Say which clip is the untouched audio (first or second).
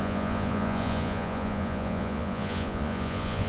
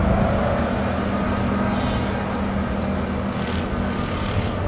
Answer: second